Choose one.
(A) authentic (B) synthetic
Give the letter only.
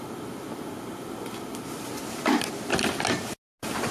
A